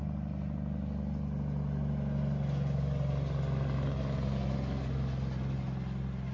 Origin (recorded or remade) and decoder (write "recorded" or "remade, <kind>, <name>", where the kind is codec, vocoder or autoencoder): recorded